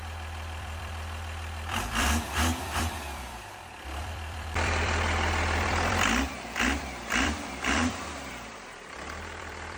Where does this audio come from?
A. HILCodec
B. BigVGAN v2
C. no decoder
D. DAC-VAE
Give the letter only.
B